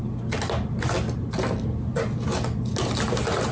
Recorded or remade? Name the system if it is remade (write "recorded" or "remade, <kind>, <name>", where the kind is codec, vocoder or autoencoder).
recorded